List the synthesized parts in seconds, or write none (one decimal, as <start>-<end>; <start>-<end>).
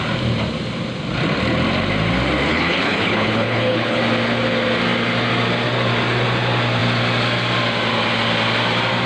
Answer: 2.5-4.0